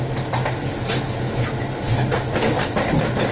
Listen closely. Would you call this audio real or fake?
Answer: real